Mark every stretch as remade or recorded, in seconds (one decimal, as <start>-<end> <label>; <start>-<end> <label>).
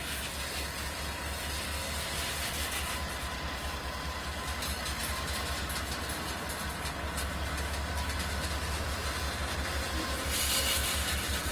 0.0-10.8 recorded; 10.8-11.5 remade